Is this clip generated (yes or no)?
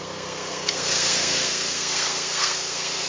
yes